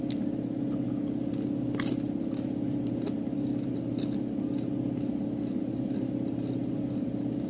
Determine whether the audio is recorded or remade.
recorded